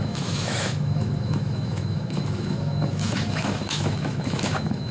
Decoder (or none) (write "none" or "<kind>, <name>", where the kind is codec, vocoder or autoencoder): autoencoder, DAC-VAE